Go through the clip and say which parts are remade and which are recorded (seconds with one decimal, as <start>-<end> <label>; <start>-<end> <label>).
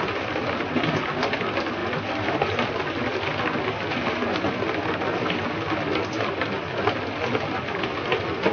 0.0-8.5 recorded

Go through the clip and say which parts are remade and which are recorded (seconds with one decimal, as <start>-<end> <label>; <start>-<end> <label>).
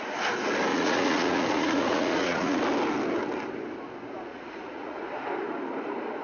0.0-0.7 recorded; 0.7-2.6 remade; 2.6-4.3 recorded; 4.3-5.0 remade; 5.0-6.2 recorded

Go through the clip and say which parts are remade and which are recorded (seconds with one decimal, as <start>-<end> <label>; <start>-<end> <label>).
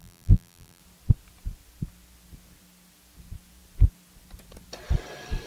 0.0-0.8 remade; 0.8-5.5 recorded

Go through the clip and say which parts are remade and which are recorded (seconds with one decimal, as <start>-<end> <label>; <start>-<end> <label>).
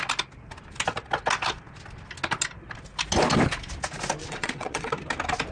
0.0-4.2 recorded; 4.2-4.9 remade; 4.9-5.5 recorded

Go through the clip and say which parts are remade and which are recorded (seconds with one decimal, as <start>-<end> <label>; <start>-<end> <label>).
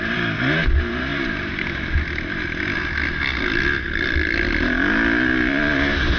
0.0-6.2 recorded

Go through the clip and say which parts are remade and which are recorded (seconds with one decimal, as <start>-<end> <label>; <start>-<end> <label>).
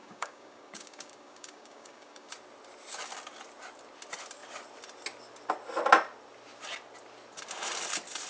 0.0-2.3 remade; 2.3-8.3 recorded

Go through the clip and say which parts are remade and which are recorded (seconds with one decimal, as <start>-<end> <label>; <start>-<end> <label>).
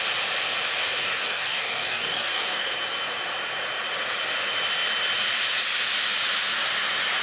0.0-1.0 recorded; 1.0-2.7 remade; 2.7-7.2 recorded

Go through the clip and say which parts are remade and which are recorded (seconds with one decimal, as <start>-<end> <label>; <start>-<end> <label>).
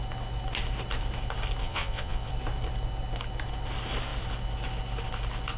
0.0-1.6 recorded; 1.6-2.3 remade; 2.3-5.6 recorded